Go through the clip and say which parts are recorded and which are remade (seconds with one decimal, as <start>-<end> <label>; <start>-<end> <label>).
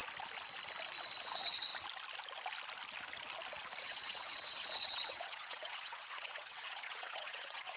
0.0-1.2 recorded; 1.2-1.7 remade; 1.7-3.8 recorded; 3.8-7.8 remade